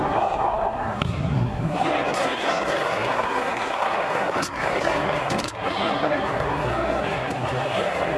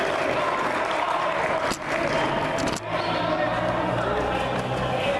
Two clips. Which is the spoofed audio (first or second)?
first